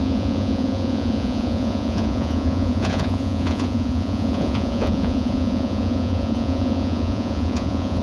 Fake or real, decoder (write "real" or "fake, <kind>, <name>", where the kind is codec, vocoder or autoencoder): fake, vocoder, Vocos